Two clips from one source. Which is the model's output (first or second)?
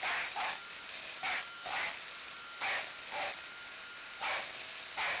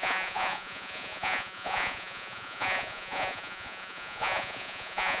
second